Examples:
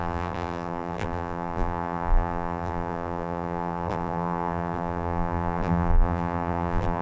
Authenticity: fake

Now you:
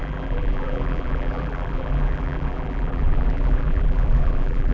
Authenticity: fake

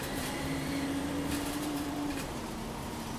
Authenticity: fake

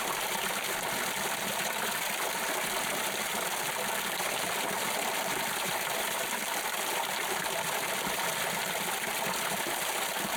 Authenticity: real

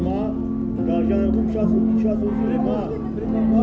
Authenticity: real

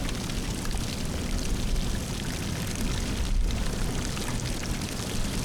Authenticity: real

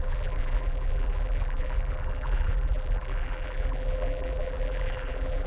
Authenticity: fake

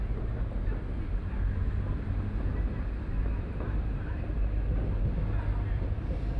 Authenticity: real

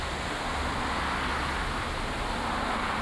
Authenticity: real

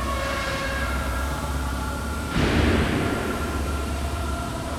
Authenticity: fake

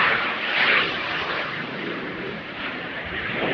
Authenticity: fake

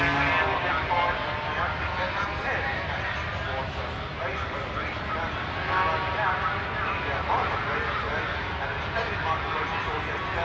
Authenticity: real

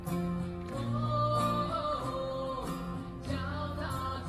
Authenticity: real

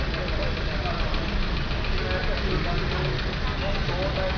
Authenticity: real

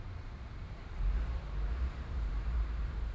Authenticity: fake